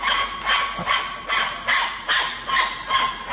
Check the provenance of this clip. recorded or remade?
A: recorded